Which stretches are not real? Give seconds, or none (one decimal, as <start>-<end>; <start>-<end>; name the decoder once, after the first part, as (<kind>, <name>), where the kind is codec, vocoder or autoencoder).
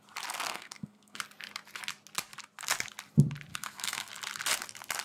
0.5-1.2 (codec, SNAC); 3.5-4.1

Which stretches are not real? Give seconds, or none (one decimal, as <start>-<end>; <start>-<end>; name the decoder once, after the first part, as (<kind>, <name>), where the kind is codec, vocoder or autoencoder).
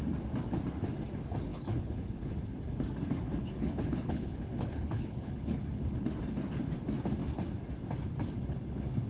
1.5-2.3 (codec, HILCodec); 3.4-5.6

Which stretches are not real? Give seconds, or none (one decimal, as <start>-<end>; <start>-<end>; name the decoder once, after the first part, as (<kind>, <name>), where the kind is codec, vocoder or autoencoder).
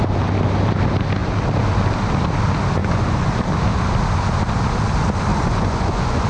2.8-3.4 (vocoder, Vocos); 5.3-6.3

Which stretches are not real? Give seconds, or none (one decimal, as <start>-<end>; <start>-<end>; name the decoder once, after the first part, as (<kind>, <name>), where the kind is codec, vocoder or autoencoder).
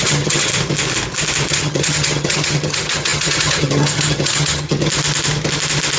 0.0-0.5 (vocoder, HiFi-GAN); 1.5-4.8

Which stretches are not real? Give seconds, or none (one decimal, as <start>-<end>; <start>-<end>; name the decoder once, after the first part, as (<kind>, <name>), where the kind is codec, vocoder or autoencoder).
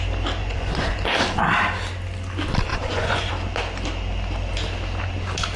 0.4-1.0 (vocoder, Vocos); 2.7-3.3